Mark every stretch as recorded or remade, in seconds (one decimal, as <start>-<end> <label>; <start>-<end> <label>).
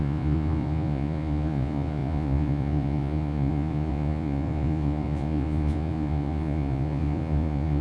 0.0-7.8 remade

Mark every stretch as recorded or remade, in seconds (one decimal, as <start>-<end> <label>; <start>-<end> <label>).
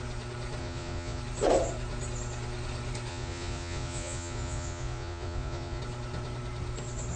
0.0-0.6 recorded; 0.6-1.2 remade; 1.2-3.1 recorded; 3.1-5.8 remade; 5.8-7.2 recorded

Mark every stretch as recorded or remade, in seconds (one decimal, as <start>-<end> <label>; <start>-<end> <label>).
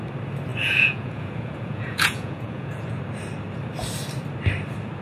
0.0-0.5 recorded; 0.5-3.0 remade; 3.0-5.0 recorded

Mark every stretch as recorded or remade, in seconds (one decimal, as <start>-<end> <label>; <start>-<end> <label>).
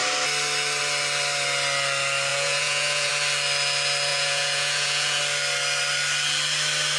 0.0-2.3 recorded; 2.3-3.1 remade; 3.1-4.1 recorded; 4.1-5.2 remade; 5.2-7.0 recorded